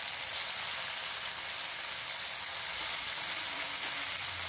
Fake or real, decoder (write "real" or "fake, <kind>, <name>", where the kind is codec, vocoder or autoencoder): real